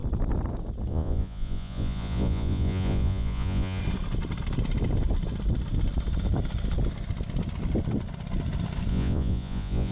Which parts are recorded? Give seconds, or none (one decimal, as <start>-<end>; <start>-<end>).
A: 0.0-0.9; 3.8-8.9